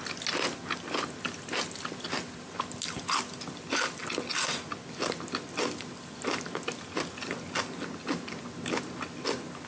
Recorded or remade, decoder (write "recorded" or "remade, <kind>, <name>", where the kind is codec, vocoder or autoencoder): recorded